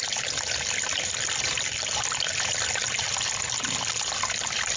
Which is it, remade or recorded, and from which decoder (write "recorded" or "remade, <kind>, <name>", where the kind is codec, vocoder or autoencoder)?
recorded